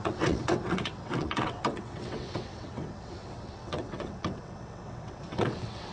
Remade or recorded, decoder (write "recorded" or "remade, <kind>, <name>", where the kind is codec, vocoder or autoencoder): remade, vocoder, WaveNeXt